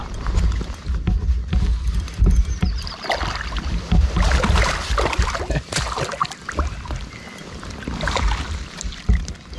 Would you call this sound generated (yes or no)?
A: no